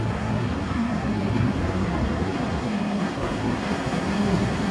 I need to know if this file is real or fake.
fake